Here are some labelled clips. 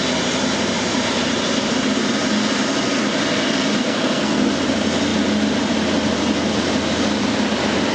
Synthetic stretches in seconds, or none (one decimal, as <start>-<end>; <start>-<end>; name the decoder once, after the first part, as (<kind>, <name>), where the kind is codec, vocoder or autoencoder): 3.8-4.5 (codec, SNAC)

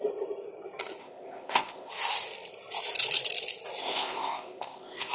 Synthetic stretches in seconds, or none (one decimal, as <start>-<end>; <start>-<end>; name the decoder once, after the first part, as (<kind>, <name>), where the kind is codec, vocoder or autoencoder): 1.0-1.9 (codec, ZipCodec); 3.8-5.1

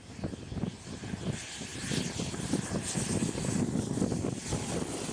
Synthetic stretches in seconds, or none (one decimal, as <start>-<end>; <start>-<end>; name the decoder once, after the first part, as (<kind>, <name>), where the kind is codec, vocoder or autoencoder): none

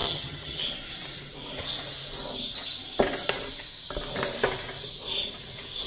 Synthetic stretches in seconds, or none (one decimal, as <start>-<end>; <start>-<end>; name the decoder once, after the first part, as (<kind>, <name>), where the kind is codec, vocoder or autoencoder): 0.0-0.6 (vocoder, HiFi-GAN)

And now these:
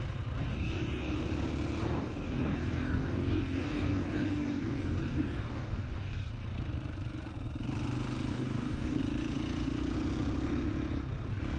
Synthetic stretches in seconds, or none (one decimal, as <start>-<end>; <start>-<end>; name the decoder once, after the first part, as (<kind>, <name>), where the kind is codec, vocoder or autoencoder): 0.5-1.2 (codec, DAC); 1.8-6.3; 8.3-9.0

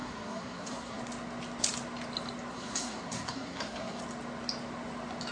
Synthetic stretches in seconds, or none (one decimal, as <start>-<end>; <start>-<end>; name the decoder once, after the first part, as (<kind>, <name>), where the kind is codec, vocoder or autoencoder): 0.0-1.0 (codec, SNAC); 2.5-4.0

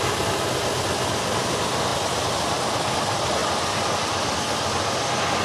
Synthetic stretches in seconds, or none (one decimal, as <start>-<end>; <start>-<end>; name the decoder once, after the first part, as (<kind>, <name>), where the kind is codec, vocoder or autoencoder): 3.4-4.7 (vocoder, BigVGAN v2)

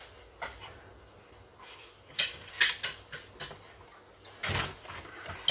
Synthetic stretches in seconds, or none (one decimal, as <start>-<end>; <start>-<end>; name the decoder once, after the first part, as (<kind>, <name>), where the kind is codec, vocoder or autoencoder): none